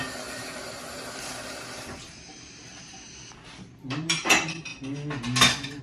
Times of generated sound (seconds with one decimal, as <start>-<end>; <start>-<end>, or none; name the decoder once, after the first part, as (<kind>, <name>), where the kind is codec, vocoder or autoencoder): 0.0-2.7 (vocoder, BigVGAN v2); 3.7-4.7